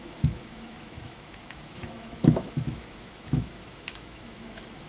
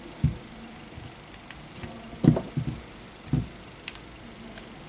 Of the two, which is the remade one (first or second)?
first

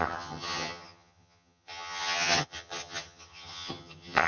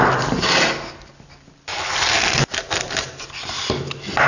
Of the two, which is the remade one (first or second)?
first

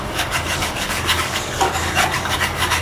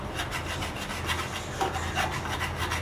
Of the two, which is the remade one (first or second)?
first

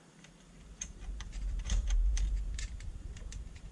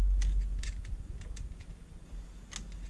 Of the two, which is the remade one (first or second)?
first